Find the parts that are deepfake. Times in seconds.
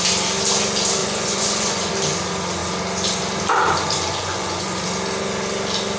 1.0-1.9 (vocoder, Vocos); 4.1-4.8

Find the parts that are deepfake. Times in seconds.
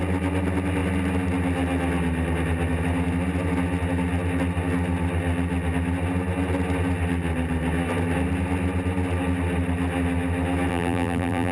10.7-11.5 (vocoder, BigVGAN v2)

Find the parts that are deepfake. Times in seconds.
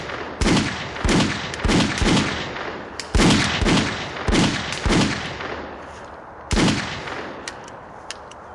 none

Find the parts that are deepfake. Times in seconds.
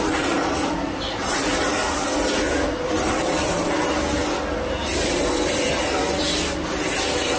none